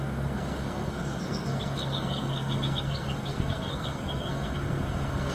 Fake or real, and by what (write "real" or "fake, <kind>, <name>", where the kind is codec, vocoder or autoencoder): fake, codec, SNAC